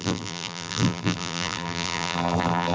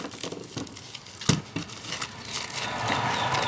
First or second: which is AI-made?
first